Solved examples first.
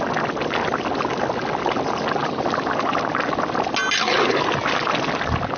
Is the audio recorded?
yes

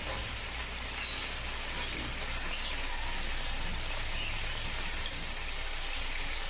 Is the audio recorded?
yes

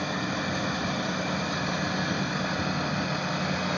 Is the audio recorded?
yes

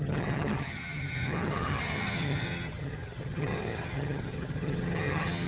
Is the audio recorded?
no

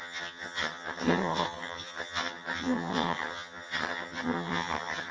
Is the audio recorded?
no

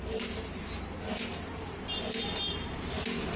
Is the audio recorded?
yes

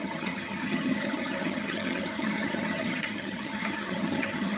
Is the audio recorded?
no